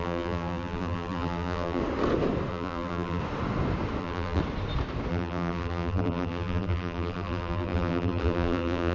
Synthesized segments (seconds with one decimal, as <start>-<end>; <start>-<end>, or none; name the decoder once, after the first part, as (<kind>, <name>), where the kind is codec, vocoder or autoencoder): 0.0-1.8 (vocoder, BigVGAN v2); 2.5-3.2; 4.0-4.4; 5.1-8.9